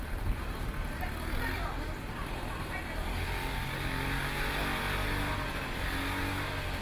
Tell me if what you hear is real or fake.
real